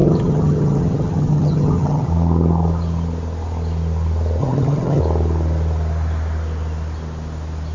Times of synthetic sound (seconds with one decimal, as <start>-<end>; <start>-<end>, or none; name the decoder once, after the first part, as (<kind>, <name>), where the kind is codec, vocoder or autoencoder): 0.0-2.1 (vocoder, HiFi-GAN); 4.4-5.0